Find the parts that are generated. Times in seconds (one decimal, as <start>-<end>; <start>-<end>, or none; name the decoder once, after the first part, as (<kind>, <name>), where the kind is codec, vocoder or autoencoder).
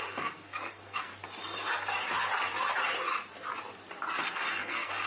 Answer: 0.0-1.1 (codec, SNAC); 4.2-5.1